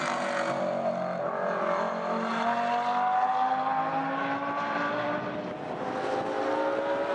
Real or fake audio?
real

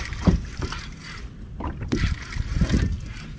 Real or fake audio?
real